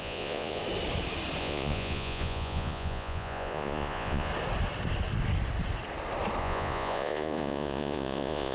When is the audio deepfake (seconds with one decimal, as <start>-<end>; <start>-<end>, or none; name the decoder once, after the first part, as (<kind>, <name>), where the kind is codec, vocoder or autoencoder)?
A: 0.0-0.6 (vocoder, Vocos); 1.4-4.3; 6.4-8.5